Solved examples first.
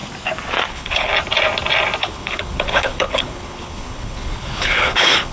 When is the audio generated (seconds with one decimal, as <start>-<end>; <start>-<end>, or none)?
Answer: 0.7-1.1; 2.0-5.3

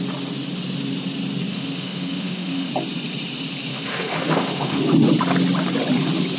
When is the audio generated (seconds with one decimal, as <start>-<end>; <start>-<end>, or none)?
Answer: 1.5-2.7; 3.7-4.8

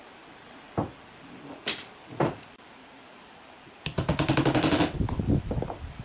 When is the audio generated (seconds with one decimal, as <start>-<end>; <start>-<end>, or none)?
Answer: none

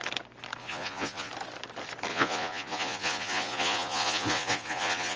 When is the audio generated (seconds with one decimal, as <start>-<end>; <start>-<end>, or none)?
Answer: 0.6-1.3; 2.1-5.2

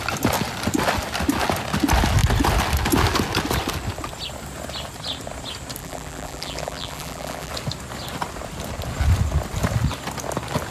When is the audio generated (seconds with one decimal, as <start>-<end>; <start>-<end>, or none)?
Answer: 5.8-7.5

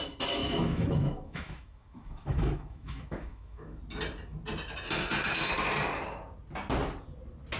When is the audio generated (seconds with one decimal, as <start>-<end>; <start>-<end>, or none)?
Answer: 0.4-3.8

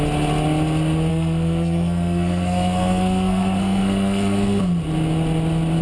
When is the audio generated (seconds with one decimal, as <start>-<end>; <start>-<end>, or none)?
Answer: 1.1-4.6

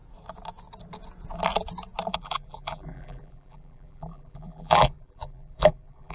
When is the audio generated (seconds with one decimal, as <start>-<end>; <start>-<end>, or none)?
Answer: 2.1-6.1